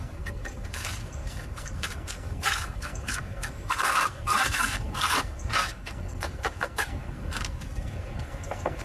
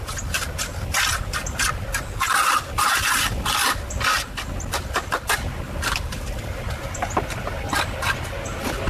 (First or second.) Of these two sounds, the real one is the second